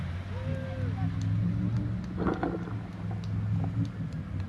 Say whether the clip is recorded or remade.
recorded